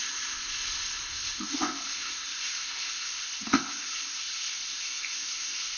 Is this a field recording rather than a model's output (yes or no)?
no